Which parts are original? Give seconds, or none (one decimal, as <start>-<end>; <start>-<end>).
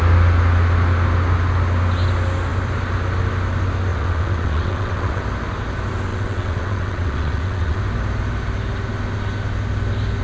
0.0-3.9; 5.2-6.1; 7.8-10.2